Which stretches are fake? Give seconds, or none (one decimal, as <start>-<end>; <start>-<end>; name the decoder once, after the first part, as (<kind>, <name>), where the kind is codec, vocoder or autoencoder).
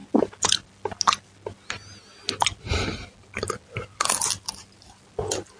none